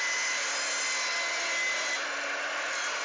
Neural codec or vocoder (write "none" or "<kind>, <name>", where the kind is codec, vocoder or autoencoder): none